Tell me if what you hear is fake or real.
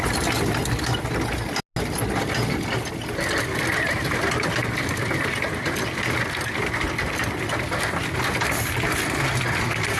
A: real